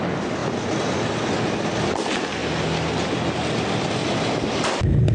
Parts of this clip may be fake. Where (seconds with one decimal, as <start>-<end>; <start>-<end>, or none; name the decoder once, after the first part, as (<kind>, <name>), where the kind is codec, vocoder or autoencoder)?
none